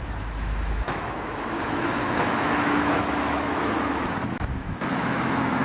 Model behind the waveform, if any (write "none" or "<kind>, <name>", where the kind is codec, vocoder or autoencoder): autoencoder, DAC-VAE